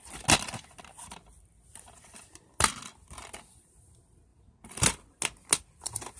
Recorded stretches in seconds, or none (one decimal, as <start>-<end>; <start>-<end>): 0.0-6.2